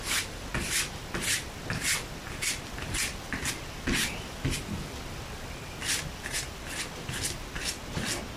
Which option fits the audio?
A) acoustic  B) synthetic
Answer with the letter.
A